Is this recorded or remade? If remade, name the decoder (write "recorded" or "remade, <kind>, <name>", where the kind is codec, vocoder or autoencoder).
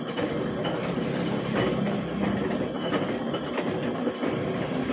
remade, vocoder, BigVGAN v2